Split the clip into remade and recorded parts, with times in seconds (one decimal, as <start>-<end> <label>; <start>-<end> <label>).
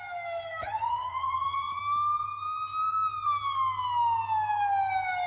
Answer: 0.0-0.6 recorded; 0.6-1.8 remade; 1.8-5.3 recorded